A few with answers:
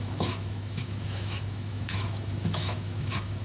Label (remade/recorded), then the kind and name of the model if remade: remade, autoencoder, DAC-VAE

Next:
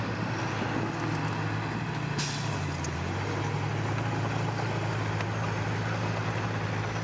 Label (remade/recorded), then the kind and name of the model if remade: recorded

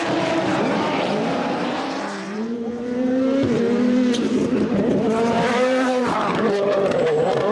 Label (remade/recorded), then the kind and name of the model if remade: remade, vocoder, BigVGAN v2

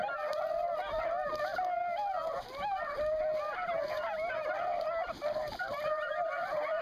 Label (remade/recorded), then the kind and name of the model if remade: recorded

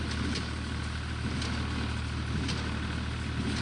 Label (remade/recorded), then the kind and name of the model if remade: recorded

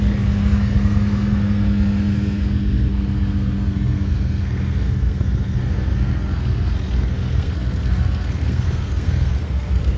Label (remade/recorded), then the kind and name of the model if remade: remade, codec, SNAC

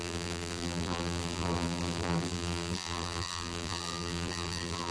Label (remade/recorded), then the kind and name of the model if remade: remade, vocoder, BigVGAN v2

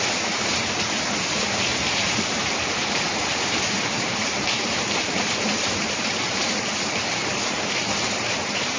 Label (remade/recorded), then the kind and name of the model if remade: remade, vocoder, BigVGAN v2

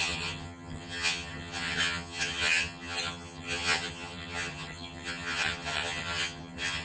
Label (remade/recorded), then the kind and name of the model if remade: remade, vocoder, HiFi-GAN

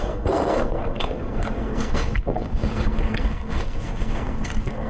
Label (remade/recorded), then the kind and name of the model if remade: remade, codec, SNAC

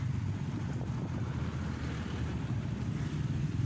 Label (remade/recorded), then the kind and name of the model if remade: recorded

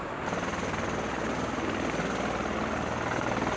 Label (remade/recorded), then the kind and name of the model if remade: recorded